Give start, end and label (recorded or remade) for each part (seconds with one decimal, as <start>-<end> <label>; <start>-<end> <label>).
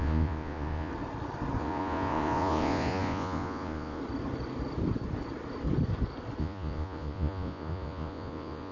0.0-0.9 remade; 0.9-1.6 recorded; 1.6-4.0 remade; 4.0-6.4 recorded; 6.4-8.7 remade